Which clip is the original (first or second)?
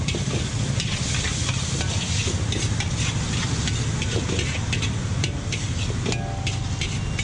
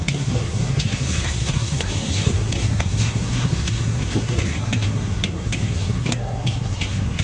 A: first